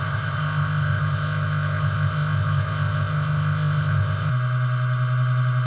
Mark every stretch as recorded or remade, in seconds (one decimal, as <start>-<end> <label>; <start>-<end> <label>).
0.0-4.3 remade; 4.3-5.7 recorded